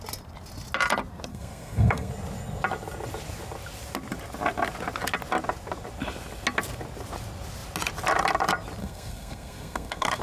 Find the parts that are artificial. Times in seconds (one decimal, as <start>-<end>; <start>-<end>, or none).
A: 1.3-2.1; 8.8-10.2